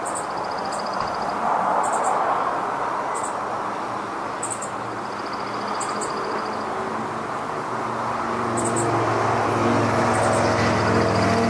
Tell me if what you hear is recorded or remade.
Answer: recorded